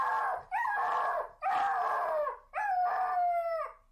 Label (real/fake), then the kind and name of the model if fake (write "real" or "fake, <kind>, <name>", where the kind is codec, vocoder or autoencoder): real